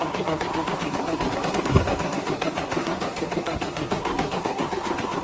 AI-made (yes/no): yes